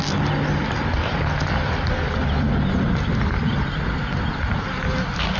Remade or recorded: recorded